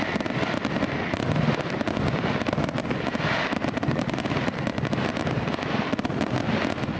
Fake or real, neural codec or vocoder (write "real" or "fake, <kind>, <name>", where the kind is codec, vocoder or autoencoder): real